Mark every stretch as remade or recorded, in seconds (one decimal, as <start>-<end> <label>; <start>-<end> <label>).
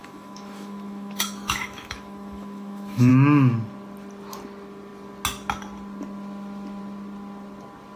0.0-3.1 remade; 3.1-8.0 recorded